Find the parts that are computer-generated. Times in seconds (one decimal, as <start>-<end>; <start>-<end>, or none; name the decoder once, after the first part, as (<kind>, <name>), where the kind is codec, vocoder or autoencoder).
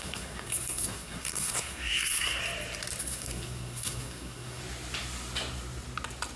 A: 0.0-2.4 (codec, SNAC); 3.0-4.6